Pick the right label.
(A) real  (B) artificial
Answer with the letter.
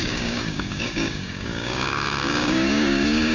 B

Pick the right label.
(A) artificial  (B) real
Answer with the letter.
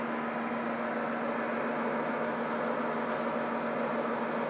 B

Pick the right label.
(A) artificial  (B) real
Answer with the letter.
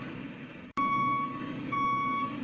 A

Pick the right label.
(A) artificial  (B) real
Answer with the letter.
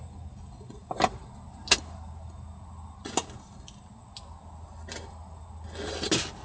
B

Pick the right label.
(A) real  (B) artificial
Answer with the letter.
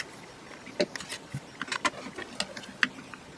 A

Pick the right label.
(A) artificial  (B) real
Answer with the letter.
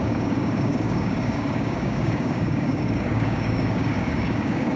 A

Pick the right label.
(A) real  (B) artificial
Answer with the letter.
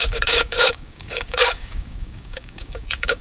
B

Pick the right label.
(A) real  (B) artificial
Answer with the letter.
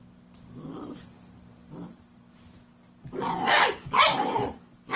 A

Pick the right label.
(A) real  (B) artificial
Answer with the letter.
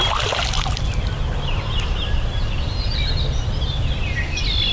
A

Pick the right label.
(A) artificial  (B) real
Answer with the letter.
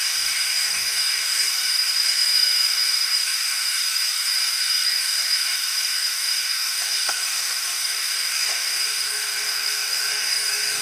A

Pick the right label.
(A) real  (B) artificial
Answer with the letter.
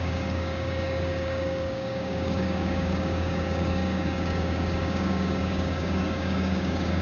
B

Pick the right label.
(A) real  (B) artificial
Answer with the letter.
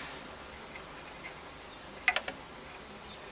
A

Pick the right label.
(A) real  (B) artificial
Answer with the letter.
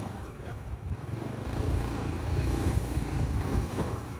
B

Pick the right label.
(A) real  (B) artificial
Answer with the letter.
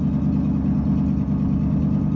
A